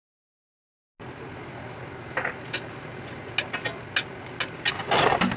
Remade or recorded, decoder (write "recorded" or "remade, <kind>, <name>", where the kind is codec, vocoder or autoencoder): recorded